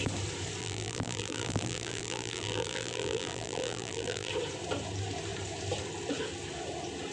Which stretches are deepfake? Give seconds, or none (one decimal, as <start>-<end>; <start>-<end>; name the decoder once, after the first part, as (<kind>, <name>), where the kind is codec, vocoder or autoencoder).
0.6-4.3 (vocoder, BigVGAN v2)